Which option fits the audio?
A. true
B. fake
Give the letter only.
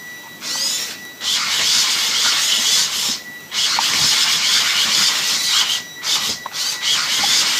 A